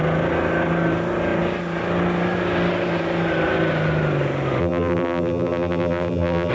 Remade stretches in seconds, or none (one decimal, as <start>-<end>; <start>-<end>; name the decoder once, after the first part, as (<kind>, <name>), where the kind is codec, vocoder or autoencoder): 4.6-6.5 (vocoder, BigVGAN v2)